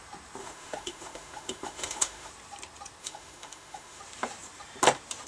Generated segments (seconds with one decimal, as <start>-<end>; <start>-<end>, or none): 0.4-2.3; 3.0-4.0